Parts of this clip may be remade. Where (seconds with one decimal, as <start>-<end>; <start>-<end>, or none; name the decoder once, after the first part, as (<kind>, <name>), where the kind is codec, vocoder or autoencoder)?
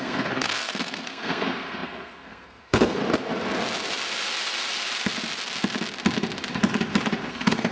0.0-3.0 (codec, SNAC); 7.3-7.7